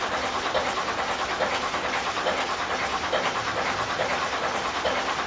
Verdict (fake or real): real